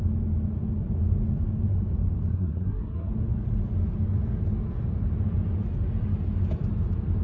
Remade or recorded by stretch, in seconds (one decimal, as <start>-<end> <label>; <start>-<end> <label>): 0.0-2.3 recorded; 2.3-3.1 remade; 3.1-7.2 recorded